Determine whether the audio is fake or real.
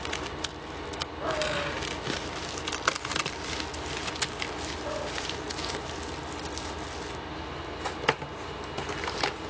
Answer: real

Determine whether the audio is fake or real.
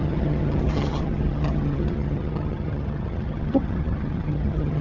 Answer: fake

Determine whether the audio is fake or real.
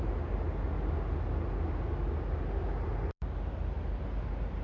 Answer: real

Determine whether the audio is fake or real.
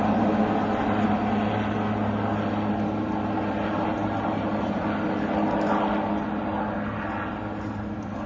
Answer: real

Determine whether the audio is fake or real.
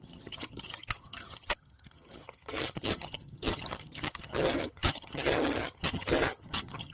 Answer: fake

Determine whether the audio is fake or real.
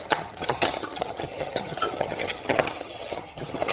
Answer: fake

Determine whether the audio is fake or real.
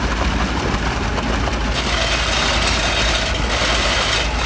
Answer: real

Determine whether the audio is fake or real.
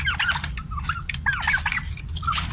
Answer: real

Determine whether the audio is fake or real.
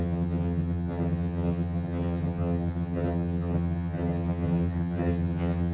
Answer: fake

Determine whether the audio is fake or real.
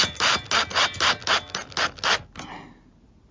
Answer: real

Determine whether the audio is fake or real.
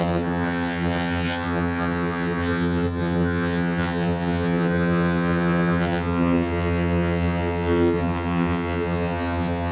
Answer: fake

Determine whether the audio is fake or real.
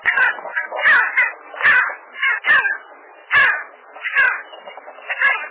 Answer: real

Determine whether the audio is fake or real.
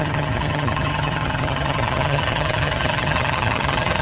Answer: fake